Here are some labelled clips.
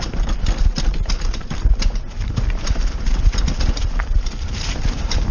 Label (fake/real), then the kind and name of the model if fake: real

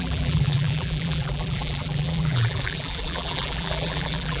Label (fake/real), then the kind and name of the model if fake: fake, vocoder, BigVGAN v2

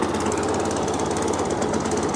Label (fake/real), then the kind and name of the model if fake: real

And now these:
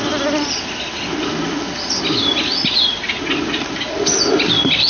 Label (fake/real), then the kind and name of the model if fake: real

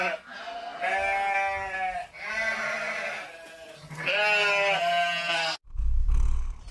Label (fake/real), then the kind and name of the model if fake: real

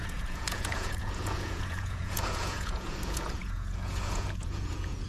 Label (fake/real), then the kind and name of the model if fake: fake, vocoder, Vocos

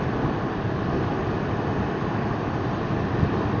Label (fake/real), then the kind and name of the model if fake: real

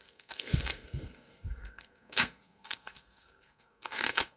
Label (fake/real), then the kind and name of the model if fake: fake, codec, SNAC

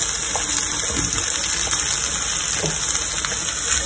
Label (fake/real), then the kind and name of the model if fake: real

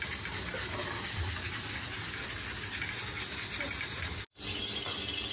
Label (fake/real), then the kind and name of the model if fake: real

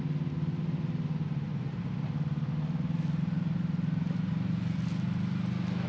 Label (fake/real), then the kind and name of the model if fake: real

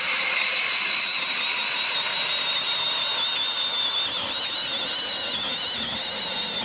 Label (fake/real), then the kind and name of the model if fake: real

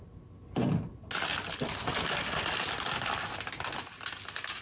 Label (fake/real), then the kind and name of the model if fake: real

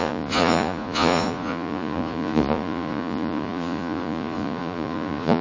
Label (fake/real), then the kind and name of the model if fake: fake, vocoder, Vocos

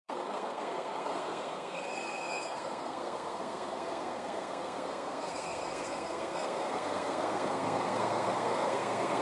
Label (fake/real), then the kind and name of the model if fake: fake, codec, SNAC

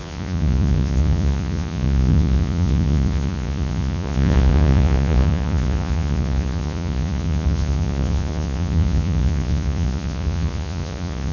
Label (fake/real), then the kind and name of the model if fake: fake, vocoder, Vocos